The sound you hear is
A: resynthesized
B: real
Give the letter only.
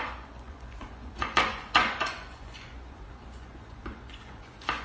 A